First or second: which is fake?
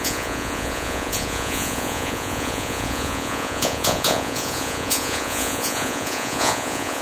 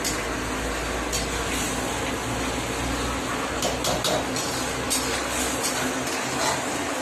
first